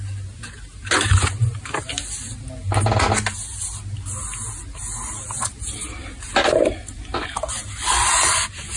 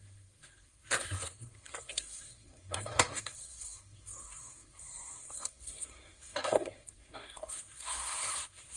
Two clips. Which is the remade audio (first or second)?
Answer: second